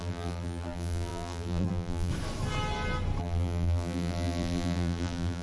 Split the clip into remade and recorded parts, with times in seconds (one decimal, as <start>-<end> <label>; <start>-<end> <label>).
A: 0.0-2.1 remade; 2.1-3.2 recorded; 3.2-5.4 remade